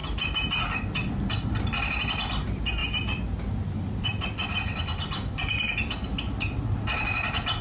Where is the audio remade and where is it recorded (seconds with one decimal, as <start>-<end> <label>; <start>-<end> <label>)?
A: 0.0-7.6 recorded